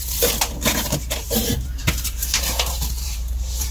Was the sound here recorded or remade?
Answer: remade